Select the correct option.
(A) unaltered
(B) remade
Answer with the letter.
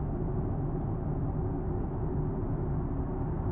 A